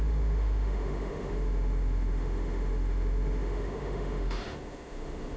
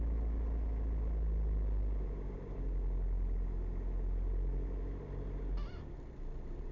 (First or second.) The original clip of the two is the second